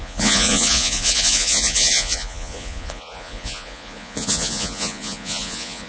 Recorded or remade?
remade